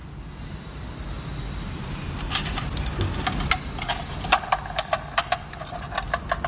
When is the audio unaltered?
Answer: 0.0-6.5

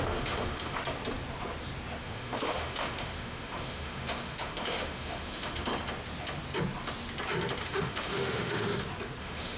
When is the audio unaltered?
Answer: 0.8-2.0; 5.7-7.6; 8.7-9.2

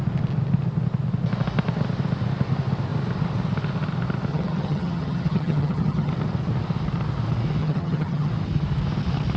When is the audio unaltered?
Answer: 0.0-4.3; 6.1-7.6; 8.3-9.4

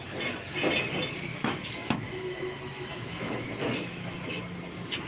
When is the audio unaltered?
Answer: 0.0-1.3; 4.4-5.1

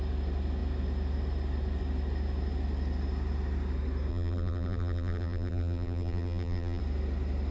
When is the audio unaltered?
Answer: 0.0-4.1; 6.8-7.5

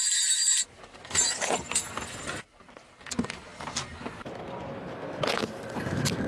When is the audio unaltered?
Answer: 0.0-6.3

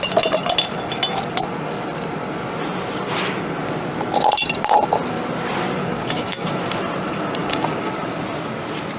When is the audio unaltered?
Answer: 0.0-5.8; 6.6-7.4; 7.9-9.0